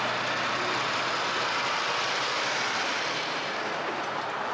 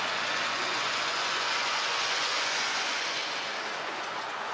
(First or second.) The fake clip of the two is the second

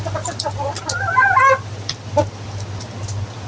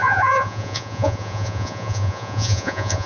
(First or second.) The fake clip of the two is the second